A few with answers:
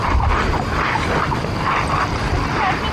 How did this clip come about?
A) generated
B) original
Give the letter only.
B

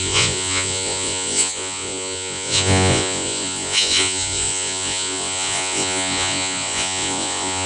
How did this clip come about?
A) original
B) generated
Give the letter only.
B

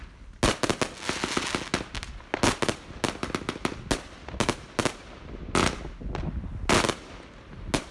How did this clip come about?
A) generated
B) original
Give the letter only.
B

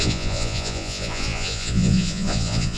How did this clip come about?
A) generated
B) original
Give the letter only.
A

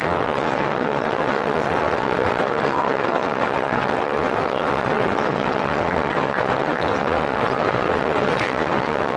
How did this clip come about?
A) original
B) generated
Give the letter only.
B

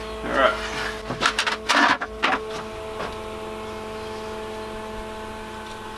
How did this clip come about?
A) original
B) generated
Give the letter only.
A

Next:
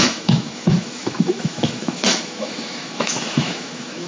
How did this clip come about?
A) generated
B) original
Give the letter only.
A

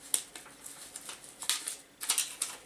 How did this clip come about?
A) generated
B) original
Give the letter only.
B